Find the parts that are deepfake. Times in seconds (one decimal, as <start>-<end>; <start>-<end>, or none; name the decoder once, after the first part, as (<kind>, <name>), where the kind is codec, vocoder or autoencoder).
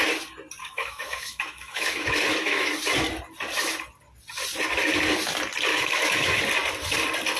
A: 0.6-2.7 (autoencoder, DAC-VAE); 5.7-6.4